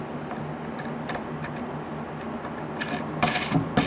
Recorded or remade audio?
recorded